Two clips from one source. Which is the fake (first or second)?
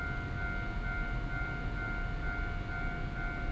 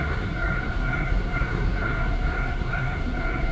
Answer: second